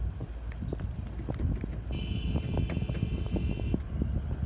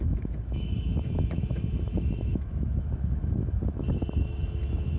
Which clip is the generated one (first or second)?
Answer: second